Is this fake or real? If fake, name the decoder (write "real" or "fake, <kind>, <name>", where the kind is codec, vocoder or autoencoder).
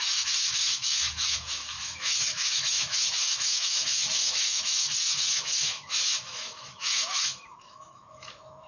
fake, autoencoder, DAC-VAE